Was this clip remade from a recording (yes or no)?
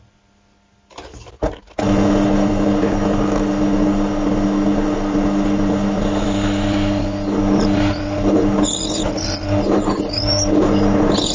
no